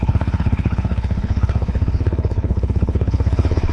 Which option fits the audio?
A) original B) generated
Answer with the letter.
B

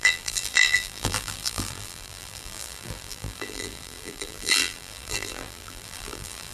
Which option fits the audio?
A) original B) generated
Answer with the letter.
B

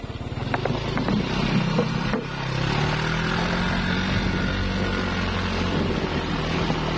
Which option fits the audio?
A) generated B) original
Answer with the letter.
B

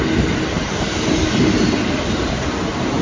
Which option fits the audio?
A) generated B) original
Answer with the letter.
B